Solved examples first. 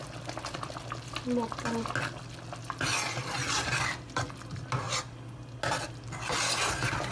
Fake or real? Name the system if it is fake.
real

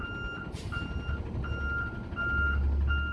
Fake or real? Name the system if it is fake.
real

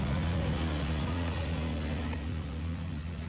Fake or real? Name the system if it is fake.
fake, vocoder, Vocos